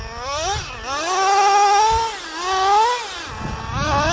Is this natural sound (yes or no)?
yes